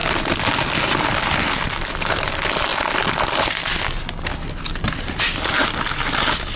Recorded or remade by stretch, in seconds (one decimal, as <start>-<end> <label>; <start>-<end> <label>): 0.0-6.6 recorded